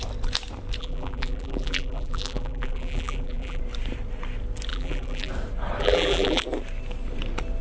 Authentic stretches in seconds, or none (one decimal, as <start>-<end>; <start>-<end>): 0.0-0.8; 3.6-4.7; 5.3-5.8; 6.4-7.6